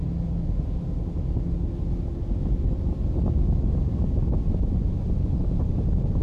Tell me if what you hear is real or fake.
real